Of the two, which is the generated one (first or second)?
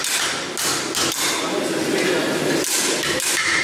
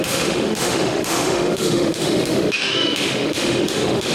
second